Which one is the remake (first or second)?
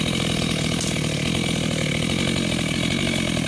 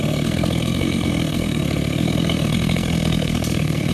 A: second